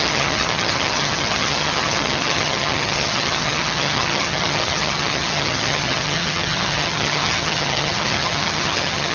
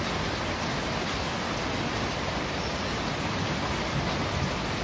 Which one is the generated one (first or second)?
first